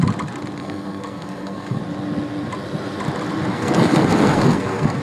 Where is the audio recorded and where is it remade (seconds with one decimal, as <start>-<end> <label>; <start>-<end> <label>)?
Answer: 0.0-0.6 recorded; 0.6-1.8 remade; 1.8-3.5 recorded; 3.5-5.0 remade